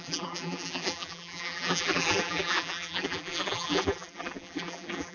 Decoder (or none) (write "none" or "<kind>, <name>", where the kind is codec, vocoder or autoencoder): vocoder, BigVGAN v2